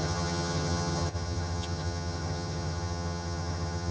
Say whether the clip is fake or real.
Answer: fake